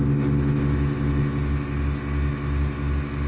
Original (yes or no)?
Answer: yes